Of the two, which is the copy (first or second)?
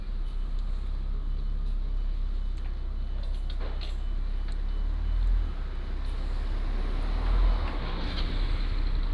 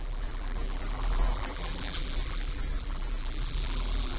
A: second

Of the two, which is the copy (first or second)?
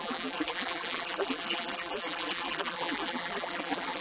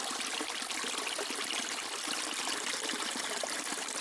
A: first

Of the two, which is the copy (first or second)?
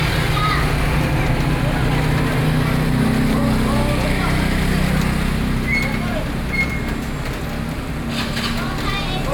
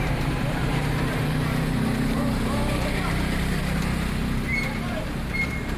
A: second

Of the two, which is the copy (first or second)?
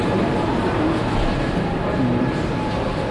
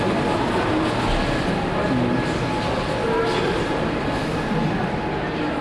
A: first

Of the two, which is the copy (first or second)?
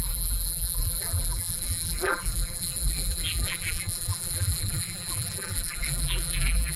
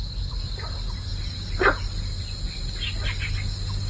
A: first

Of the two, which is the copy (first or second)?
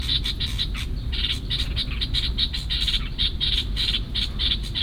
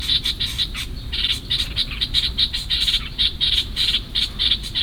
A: second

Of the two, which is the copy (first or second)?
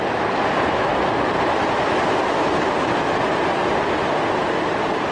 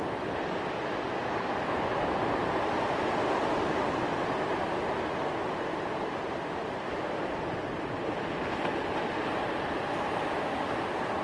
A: first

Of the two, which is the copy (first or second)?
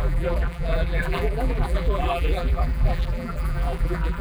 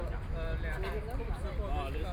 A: first